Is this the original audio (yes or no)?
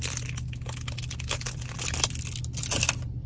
yes